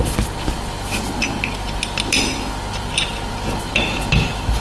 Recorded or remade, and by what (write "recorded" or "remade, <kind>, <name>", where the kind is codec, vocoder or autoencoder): recorded